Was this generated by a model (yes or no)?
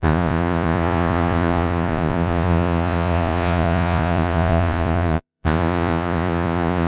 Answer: yes